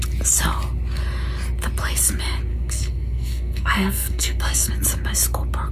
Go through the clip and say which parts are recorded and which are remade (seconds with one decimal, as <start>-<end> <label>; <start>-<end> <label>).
0.0-2.5 recorded; 2.5-4.7 remade; 4.7-5.7 recorded